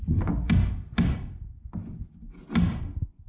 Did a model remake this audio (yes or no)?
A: no